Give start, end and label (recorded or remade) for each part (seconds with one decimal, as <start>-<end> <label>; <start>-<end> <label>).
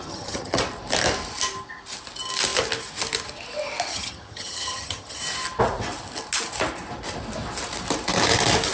0.0-0.6 remade; 0.6-3.9 recorded; 3.9-5.2 remade; 5.2-8.7 recorded